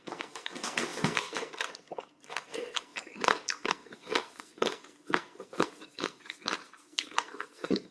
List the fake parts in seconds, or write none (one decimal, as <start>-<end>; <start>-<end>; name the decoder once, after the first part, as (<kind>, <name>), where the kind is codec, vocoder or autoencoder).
0.0-7.9 (codec, SNAC)